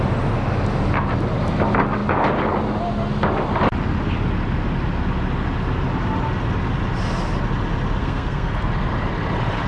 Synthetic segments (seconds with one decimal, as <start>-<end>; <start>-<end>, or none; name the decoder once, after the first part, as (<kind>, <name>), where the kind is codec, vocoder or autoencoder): 8.0-8.7 (codec, SNAC)